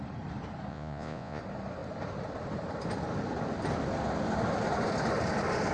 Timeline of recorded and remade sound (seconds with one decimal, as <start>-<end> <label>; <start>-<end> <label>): 0.0-0.7 recorded; 0.7-1.4 remade; 1.4-5.7 recorded